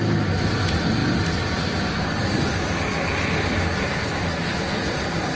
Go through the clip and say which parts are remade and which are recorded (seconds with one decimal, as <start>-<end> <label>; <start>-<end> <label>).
0.0-5.3 recorded